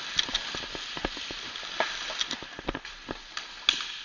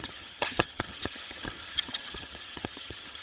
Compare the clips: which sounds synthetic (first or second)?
second